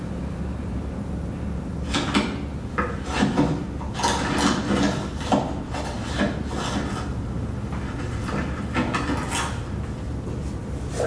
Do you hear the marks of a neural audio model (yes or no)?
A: no